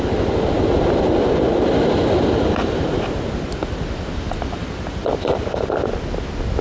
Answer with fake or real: real